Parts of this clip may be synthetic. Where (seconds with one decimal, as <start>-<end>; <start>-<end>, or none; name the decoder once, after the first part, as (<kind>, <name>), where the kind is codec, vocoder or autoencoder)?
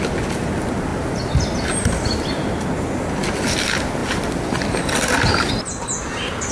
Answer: none